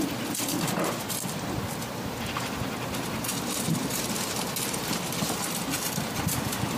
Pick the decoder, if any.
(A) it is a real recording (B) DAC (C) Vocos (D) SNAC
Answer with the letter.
A